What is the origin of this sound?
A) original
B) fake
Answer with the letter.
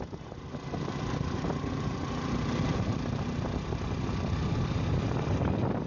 A